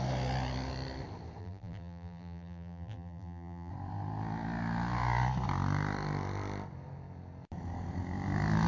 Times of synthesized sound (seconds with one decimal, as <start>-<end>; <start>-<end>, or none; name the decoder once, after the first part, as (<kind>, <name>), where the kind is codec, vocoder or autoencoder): 1.4-3.7 (vocoder, BigVGAN v2)